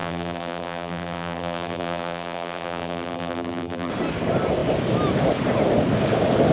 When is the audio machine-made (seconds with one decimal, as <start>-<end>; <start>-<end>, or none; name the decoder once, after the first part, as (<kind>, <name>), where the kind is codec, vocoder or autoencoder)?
0.0-3.9 (vocoder, BigVGAN v2)